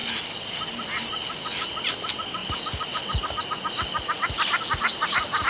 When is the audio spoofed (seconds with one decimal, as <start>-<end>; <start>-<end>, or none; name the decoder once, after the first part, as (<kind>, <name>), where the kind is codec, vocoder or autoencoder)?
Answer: none